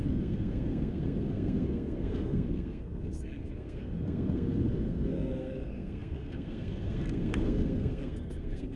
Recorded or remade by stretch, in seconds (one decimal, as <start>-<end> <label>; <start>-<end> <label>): 0.0-8.8 remade